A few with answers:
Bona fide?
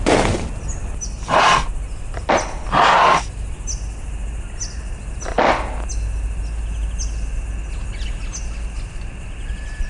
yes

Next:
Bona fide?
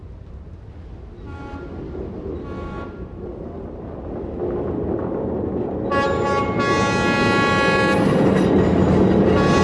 yes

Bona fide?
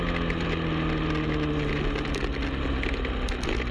yes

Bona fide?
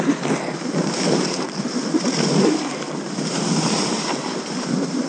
yes